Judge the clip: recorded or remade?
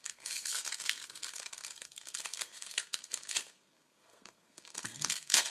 remade